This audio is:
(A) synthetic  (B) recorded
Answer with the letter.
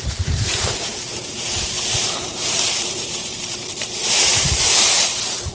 A